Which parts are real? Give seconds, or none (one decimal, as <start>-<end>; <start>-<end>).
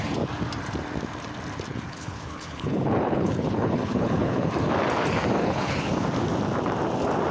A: 0.0-1.7; 4.5-5.4; 5.9-7.3